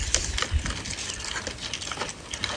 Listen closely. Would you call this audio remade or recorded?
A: recorded